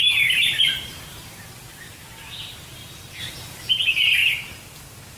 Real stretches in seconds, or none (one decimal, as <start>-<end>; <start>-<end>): 4.2-5.2

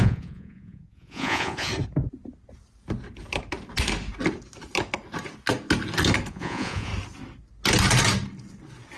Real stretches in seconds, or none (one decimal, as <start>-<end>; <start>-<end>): 1.7-6.3; 6.9-9.0

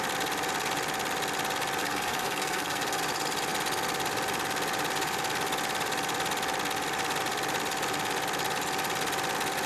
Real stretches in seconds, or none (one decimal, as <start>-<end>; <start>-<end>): 0.0-1.8; 3.0-9.7

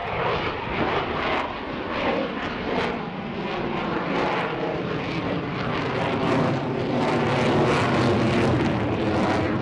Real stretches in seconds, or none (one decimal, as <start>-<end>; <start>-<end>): 0.0-9.6

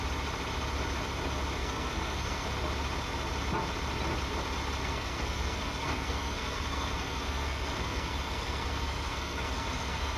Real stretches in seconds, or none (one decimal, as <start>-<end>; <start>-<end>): 0.0-1.6; 2.5-4.8

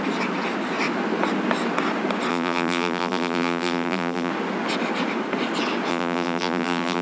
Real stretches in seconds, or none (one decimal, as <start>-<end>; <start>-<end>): 0.0-2.3; 4.3-5.9

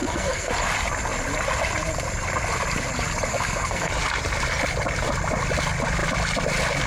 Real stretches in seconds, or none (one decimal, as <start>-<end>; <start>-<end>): 0.5-3.3; 3.9-6.9

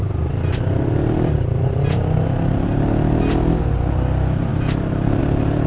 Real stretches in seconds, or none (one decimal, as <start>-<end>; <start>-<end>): 0.0-4.5; 5.2-5.7